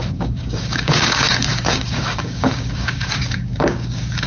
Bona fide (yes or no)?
no